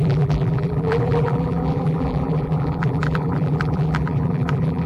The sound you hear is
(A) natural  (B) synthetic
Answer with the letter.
B